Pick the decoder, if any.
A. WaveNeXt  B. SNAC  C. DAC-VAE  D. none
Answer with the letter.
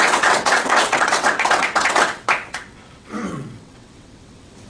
A